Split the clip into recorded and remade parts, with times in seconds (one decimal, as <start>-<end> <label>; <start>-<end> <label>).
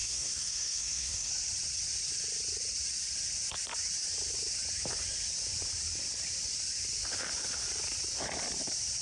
0.0-1.3 remade; 1.3-9.0 recorded